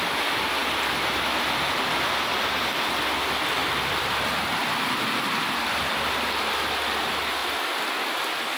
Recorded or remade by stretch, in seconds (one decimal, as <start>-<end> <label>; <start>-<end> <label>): 0.0-3.6 recorded; 3.6-4.1 remade; 4.1-4.6 recorded; 4.6-5.3 remade; 5.3-7.4 recorded; 7.4-7.9 remade; 7.9-8.6 recorded